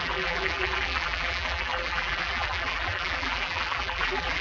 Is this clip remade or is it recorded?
remade